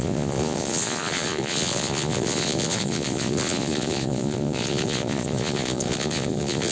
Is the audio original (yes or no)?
no